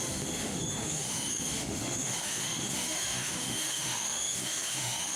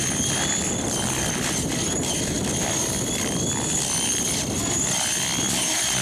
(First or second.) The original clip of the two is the second